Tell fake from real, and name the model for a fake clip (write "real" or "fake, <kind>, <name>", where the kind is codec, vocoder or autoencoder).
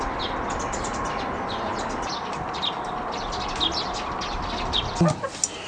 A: real